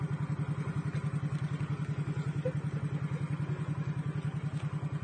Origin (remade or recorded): recorded